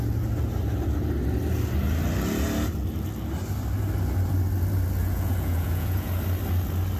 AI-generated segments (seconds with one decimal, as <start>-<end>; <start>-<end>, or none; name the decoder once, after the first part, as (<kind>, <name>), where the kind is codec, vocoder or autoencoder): 5.0-6.1 (vocoder, Vocos)